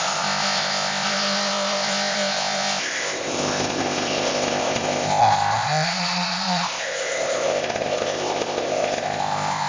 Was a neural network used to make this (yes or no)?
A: yes